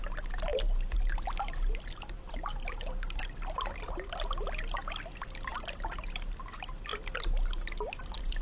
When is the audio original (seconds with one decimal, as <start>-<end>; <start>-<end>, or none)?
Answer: 0.0-8.4